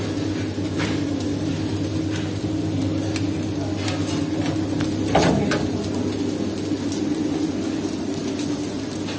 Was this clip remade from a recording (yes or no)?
no